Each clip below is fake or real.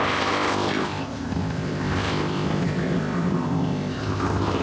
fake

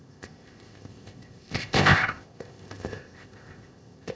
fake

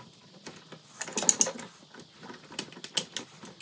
real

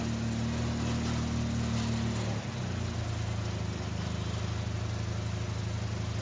real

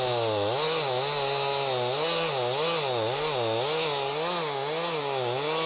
real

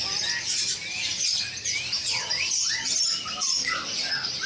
real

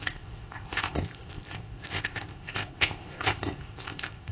fake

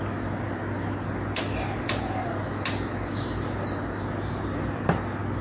real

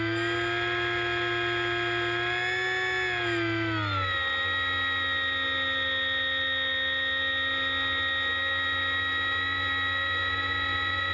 real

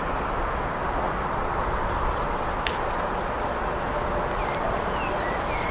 real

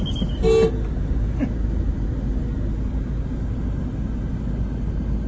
real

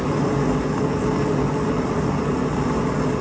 real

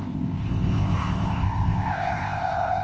fake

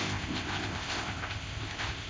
fake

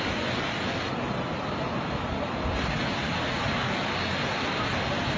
real